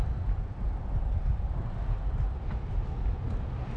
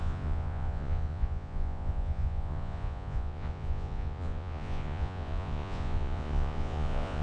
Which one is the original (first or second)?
first